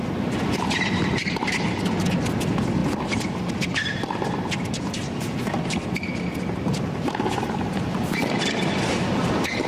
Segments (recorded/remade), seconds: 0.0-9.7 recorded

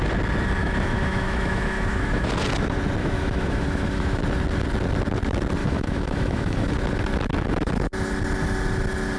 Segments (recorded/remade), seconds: 0.0-0.6 recorded; 0.6-2.3 remade; 2.3-3.0 recorded; 3.0-4.2 remade; 4.2-5.6 recorded; 5.6-6.7 remade; 6.7-9.2 recorded

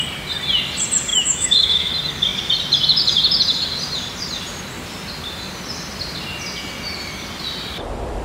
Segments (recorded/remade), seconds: 0.0-1.1 recorded; 1.1-1.9 remade; 1.9-8.2 recorded

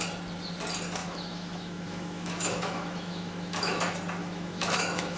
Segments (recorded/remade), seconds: 0.0-1.0 recorded; 1.0-3.8 remade; 3.8-4.2 recorded; 4.2-5.2 remade

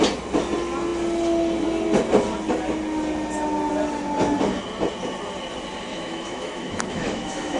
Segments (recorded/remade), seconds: 0.0-5.9 recorded; 5.9-7.6 remade

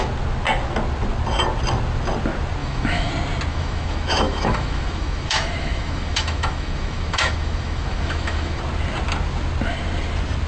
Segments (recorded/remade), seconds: 0.0-2.6 recorded; 2.6-3.1 remade; 3.1-3.5 recorded; 3.5-8.6 remade; 8.6-10.5 recorded

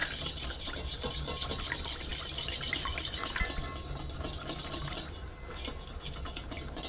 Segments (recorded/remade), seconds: 0.0-6.9 recorded

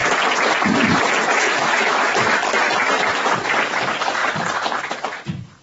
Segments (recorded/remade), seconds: 0.0-1.3 recorded; 1.3-3.3 remade; 3.3-5.6 recorded